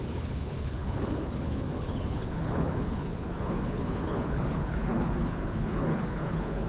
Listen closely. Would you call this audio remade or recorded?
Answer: remade